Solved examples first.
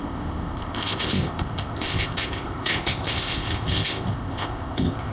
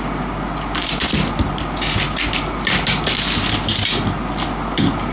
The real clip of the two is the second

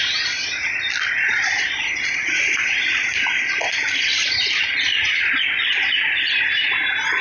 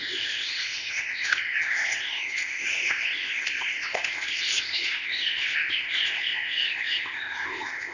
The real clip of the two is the first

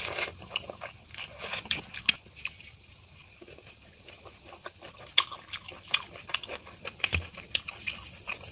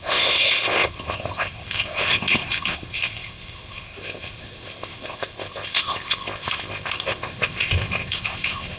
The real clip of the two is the first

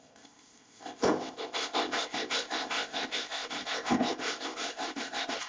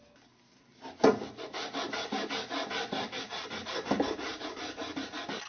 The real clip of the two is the second